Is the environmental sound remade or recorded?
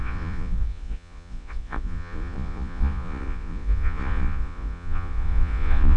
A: remade